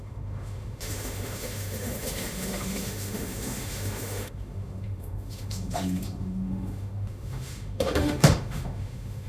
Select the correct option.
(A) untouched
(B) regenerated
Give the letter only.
B